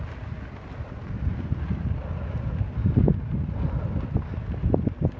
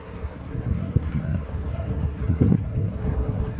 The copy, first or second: second